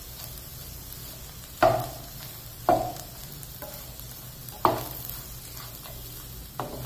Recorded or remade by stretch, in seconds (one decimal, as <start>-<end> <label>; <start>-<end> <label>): 0.0-6.9 recorded